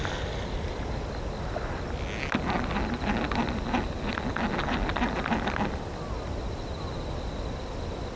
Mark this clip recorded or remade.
recorded